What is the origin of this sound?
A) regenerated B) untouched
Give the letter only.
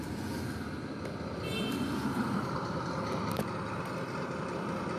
B